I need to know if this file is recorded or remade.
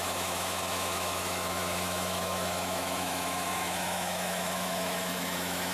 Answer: remade